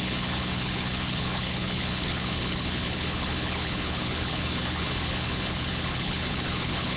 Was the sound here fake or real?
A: fake